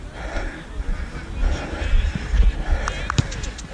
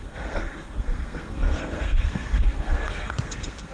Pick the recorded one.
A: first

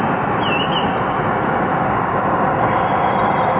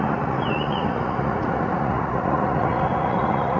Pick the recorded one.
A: first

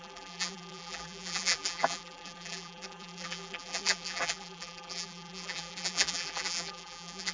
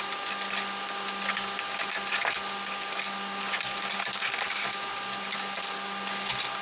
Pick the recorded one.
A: second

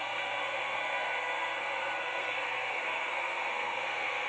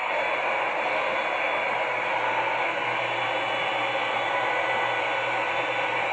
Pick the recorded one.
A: second